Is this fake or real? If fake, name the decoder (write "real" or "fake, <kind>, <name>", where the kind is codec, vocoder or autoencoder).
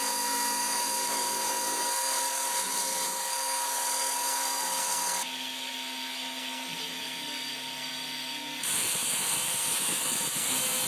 fake, codec, SNAC